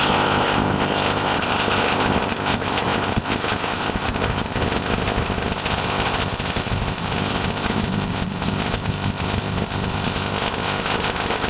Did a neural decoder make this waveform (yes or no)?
yes